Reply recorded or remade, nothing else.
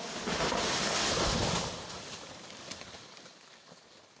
recorded